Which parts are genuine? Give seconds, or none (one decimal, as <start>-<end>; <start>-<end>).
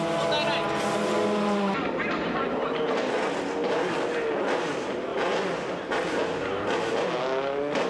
0.0-7.9